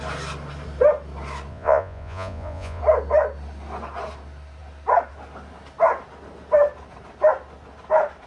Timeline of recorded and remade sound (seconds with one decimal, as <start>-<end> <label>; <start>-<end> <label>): 0.0-1.5 recorded; 1.5-2.8 remade; 2.8-8.3 recorded